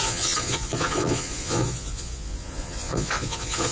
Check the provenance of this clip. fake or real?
fake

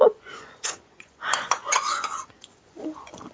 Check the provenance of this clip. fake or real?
fake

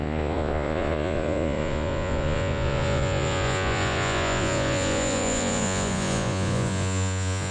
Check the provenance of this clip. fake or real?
fake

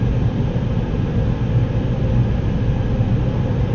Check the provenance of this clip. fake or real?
real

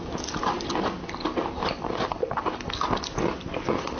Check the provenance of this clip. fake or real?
real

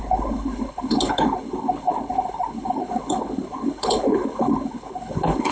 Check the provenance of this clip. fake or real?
fake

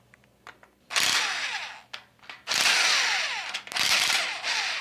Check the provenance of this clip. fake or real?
real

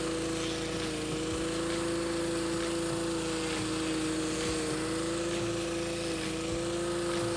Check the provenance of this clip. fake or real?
real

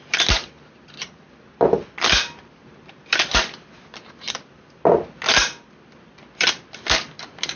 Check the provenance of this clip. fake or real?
fake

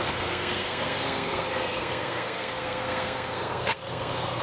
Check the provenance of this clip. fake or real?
fake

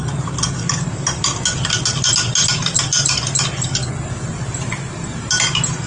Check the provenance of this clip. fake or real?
real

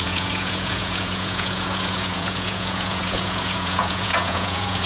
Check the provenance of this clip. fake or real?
fake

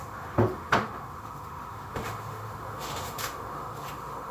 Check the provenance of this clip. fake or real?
fake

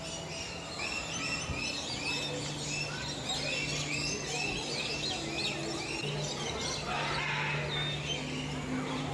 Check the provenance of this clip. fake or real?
real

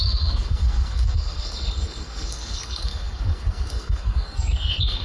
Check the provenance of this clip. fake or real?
fake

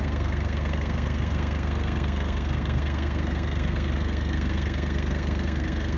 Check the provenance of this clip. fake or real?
fake